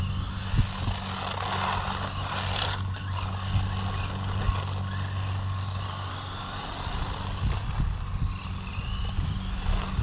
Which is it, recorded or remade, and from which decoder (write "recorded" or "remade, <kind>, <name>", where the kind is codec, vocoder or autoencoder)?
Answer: recorded